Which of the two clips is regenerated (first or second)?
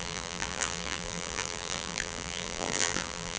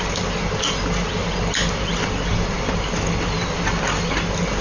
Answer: first